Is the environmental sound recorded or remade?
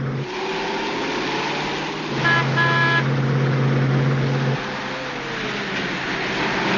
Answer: recorded